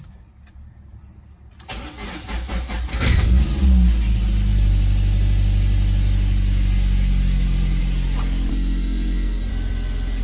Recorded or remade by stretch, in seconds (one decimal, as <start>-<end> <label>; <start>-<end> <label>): 0.0-2.9 recorded; 2.9-3.4 remade; 3.4-8.5 recorded; 8.5-9.5 remade; 9.5-10.2 recorded